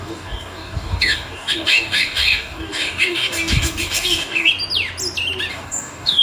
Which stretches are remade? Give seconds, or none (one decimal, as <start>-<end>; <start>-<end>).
0.0-4.5; 5.5-6.2